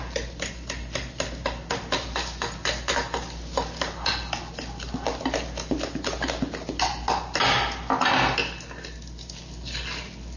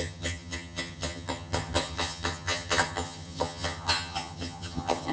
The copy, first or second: second